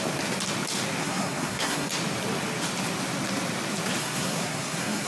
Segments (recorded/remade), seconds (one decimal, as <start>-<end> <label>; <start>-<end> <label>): 0.0-1.0 recorded; 1.0-1.9 remade; 1.9-4.0 recorded; 4.0-5.1 remade